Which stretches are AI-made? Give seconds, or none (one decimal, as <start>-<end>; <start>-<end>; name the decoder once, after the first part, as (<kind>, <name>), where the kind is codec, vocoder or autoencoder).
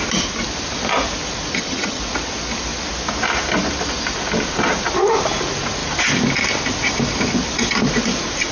1.5-2.0 (vocoder, HiFi-GAN)